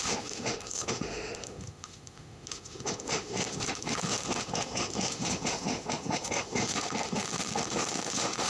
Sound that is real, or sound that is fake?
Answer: fake